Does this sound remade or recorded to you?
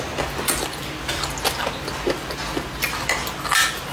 recorded